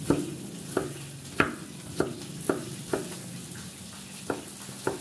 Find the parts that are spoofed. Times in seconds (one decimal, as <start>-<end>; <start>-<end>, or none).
none